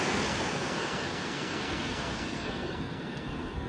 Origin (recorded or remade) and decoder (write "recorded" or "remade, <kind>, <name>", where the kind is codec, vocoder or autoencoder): remade, codec, SNAC